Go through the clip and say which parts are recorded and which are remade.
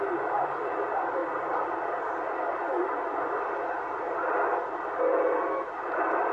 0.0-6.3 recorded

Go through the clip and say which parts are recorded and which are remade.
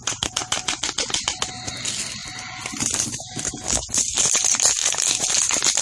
0.0-5.8 recorded